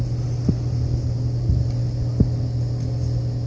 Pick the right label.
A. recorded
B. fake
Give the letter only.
A